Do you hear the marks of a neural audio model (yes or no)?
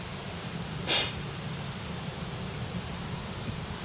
yes